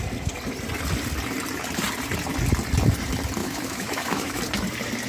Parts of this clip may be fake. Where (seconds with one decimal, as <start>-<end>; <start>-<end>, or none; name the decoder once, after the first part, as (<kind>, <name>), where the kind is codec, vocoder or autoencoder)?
3.4-4.4 (autoencoder, DAC-VAE)